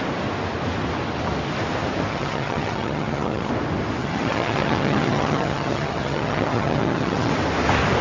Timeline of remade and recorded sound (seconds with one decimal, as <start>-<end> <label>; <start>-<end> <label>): 0.0-2.1 recorded; 2.1-3.5 remade; 3.5-4.0 recorded; 4.0-7.3 remade; 7.3-8.0 recorded